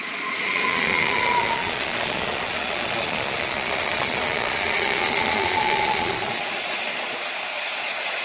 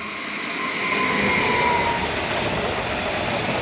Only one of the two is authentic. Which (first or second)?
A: second